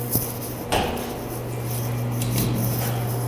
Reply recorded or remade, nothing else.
recorded